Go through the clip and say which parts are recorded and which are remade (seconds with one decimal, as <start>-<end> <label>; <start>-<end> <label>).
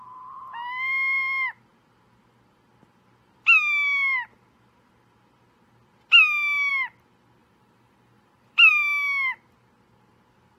0.0-7.4 recorded; 7.4-8.7 remade; 8.7-10.6 recorded